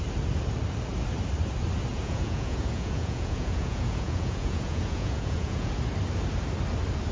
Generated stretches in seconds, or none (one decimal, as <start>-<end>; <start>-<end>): 1.9-5.7